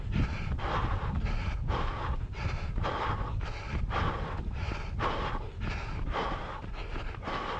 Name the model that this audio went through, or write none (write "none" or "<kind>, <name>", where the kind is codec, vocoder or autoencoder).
none